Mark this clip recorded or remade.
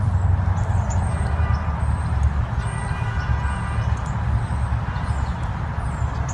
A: recorded